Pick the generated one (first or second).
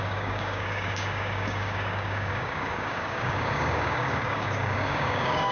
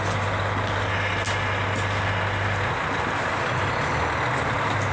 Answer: first